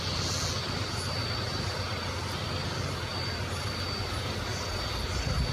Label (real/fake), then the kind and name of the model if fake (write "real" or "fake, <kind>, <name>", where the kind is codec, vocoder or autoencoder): real